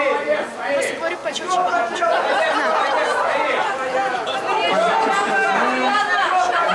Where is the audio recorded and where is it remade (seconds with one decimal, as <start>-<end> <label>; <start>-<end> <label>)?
0.0-6.7 recorded

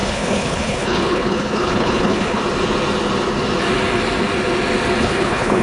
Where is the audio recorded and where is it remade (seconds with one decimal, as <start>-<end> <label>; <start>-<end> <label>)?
0.0-2.4 remade; 2.4-5.0 recorded; 5.0-5.6 remade

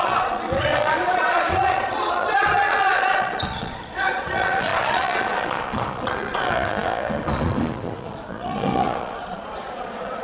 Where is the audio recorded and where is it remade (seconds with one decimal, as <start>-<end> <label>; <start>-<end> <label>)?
0.0-10.2 remade